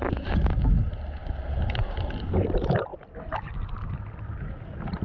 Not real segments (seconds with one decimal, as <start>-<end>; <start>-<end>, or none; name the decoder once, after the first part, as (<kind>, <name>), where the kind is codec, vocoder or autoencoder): 1.2-2.1 (vocoder, BigVGAN v2)